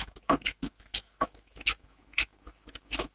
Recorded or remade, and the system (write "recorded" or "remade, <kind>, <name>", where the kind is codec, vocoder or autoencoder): remade, autoencoder, DAC-VAE